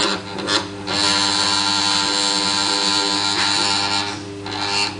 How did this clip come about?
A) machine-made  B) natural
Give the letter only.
B